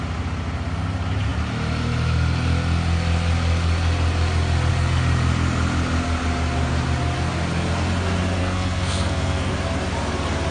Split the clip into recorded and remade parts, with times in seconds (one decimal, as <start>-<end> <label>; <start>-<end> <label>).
0.0-8.4 recorded; 8.4-9.5 remade; 9.5-10.5 recorded

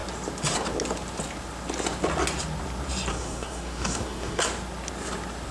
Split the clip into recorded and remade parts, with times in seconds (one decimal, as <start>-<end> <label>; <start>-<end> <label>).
0.0-3.1 recorded; 3.1-4.4 remade; 4.4-5.5 recorded